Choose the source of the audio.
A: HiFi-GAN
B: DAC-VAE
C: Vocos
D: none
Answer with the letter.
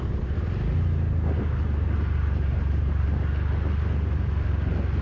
D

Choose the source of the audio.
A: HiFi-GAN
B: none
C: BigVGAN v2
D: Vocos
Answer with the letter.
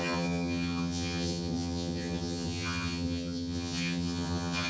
A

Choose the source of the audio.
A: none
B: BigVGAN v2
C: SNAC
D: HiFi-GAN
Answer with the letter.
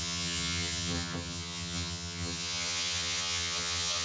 D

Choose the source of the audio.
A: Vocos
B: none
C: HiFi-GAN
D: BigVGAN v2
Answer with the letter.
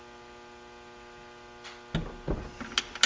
B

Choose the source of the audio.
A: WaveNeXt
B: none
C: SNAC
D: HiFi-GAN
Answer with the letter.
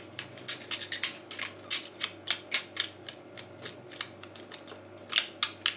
B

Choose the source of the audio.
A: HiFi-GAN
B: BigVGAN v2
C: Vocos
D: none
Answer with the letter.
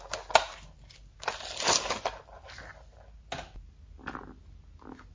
D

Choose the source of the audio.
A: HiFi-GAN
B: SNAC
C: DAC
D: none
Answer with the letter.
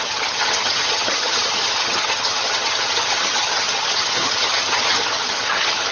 A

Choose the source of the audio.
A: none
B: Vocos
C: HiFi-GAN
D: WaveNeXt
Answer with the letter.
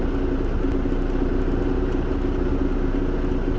A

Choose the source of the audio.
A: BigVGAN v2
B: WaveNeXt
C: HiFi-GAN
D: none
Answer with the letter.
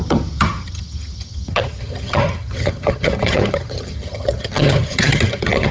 C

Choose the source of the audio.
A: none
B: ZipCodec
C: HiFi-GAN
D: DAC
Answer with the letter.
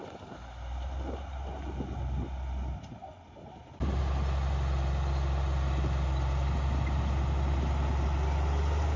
A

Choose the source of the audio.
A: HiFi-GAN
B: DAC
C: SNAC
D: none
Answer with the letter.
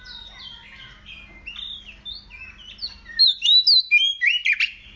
D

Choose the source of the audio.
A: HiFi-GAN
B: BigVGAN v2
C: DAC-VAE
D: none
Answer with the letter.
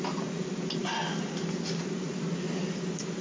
D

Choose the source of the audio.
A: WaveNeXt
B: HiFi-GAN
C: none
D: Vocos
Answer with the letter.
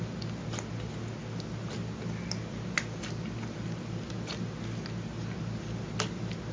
C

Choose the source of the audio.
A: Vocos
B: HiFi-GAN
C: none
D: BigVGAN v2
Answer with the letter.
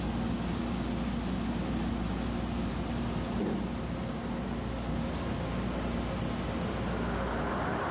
C